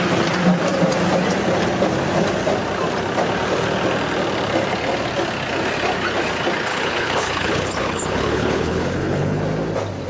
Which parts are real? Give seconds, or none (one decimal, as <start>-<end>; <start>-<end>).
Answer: 0.0-6.7; 9.4-10.1